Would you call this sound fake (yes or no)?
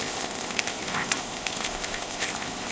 yes